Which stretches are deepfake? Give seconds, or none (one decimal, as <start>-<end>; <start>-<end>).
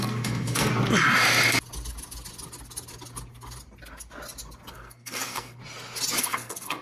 0.0-0.7; 4.7-5.6; 6.2-6.8